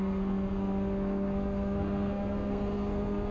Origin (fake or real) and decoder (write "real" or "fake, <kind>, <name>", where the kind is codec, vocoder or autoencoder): fake, codec, SNAC